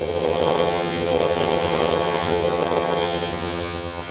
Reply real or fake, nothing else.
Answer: fake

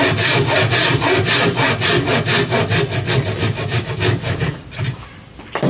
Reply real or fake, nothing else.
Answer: real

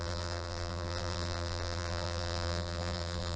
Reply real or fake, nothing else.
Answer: fake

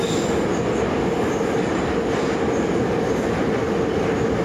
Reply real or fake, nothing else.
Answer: real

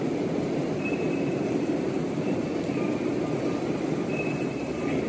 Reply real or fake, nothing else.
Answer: real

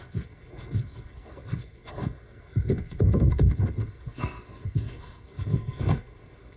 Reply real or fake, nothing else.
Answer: fake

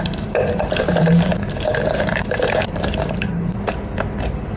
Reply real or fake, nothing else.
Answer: fake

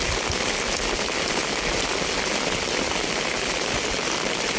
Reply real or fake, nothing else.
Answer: real